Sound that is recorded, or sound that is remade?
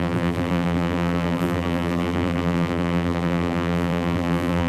remade